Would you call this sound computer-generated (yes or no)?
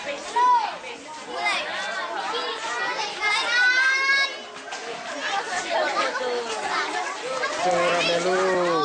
no